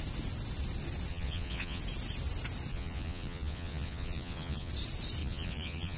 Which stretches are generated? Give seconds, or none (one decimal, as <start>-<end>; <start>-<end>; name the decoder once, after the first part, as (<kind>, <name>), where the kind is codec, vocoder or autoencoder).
1.1-1.8 (vocoder, Vocos); 2.7-4.7; 5.2-6.0